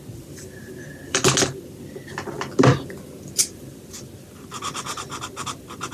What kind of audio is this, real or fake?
real